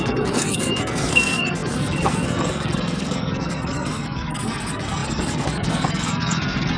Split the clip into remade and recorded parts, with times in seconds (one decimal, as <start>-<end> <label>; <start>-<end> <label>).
0.0-6.8 remade